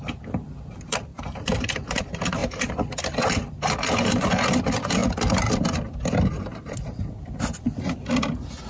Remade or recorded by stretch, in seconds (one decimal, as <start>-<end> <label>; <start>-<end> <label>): 0.0-1.1 recorded; 1.1-2.0 remade; 2.0-8.7 recorded